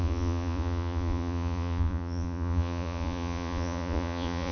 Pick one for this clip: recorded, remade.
remade